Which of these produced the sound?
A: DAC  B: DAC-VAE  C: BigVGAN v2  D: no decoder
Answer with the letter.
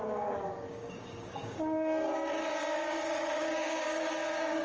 A